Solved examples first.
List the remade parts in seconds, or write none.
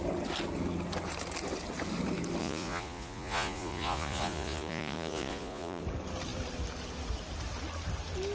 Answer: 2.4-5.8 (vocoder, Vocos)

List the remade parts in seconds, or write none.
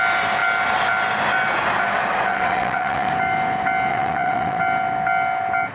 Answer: 2.3-3.1 (vocoder, WaveNeXt); 3.9-4.6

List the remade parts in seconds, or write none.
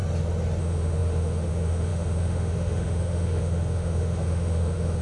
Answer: 0.6-5.0 (autoencoder, DAC-VAE)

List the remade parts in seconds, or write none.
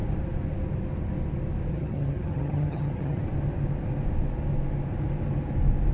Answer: 1.7-3.2 (vocoder, HiFi-GAN)